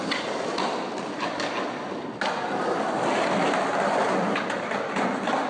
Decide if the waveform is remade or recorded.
recorded